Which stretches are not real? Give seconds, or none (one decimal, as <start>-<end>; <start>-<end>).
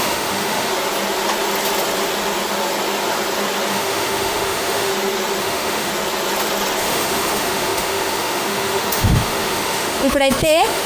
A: 0.0-0.7; 3.7-4.9; 5.4-5.9; 6.8-10.9